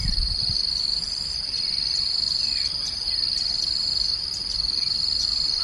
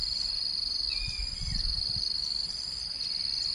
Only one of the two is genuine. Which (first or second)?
second